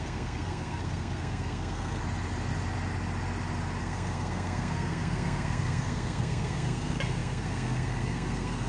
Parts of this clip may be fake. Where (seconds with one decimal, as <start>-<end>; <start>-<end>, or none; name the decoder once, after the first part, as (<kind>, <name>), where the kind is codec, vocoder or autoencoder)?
0.0-2.0 (codec, SNAC); 3.8-8.7